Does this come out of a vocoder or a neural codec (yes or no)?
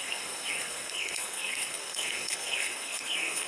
yes